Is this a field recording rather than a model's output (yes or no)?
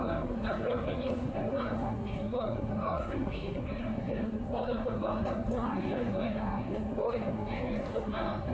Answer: no